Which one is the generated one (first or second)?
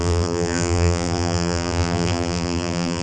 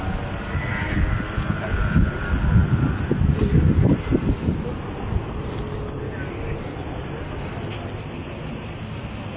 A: first